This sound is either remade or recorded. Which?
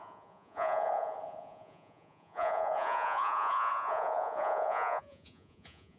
remade